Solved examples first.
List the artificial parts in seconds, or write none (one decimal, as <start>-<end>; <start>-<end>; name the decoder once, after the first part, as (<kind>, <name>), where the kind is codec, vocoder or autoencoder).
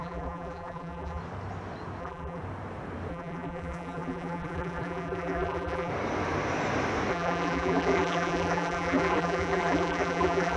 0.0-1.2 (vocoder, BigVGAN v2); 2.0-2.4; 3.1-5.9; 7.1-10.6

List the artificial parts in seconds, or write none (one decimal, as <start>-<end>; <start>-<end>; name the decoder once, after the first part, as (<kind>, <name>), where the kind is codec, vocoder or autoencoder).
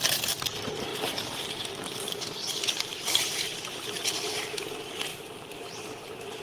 0.9-2.2 (vocoder, BigVGAN v2); 2.9-3.8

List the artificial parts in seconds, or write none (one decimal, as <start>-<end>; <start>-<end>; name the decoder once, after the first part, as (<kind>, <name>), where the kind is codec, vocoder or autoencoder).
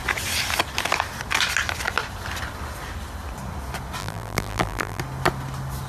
4.0-5.0 (vocoder, BigVGAN v2)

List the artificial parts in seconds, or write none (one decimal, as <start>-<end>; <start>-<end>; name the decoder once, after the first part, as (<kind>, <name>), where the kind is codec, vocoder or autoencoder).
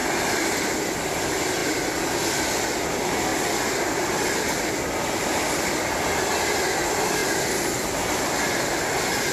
1.6-2.2 (vocoder, BigVGAN v2)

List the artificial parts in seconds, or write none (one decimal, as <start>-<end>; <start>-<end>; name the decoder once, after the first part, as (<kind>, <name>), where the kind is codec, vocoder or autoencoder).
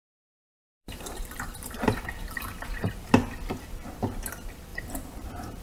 0.4-2.9 (vocoder, BigVGAN v2); 4.7-5.6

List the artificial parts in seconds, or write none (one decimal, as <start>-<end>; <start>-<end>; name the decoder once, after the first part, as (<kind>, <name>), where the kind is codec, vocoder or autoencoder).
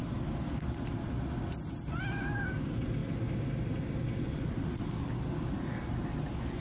3.0-3.7 (vocoder, BigVGAN v2)